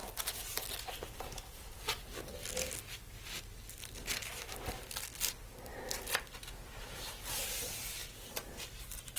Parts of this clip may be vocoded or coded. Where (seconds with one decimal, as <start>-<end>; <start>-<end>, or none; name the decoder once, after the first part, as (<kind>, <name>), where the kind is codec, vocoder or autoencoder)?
none

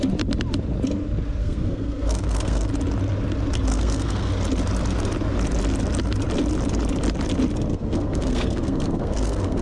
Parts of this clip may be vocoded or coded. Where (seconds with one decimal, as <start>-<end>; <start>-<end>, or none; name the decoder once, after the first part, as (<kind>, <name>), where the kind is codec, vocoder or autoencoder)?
1.4-2.7 (codec, SNAC); 3.7-4.3; 7.7-9.6

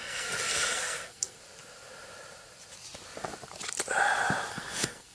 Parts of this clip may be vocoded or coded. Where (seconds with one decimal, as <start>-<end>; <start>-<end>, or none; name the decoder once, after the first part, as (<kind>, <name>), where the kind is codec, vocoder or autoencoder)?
0.0-1.4 (codec, SNAC); 4.5-5.1

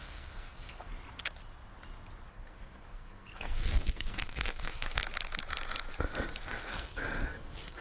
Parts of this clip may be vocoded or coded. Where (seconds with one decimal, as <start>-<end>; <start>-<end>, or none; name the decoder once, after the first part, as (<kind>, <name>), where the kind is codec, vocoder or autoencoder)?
0.0-0.9 (codec, SNAC); 2.3-5.0; 6.4-7.8

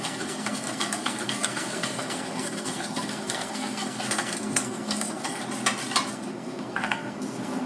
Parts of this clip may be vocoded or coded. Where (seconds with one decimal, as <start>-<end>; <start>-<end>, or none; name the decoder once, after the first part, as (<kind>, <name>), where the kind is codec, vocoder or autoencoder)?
0.0-5.4 (codec, SNAC); 6.1-7.7

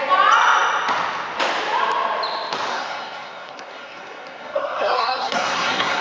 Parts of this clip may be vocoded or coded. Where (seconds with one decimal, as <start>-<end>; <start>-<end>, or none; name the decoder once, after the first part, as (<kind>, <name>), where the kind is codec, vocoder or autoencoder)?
2.7-6.0 (codec, SNAC)

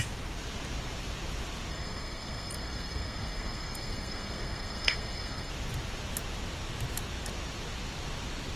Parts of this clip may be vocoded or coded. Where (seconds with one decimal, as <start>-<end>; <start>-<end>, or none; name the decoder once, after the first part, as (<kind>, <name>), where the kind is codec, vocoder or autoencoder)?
1.7-5.5 (codec, SNAC)